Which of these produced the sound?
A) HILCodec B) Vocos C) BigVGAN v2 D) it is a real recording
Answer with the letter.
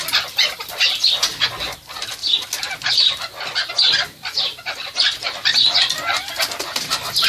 D